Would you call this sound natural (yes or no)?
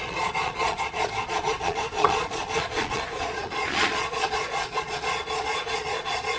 no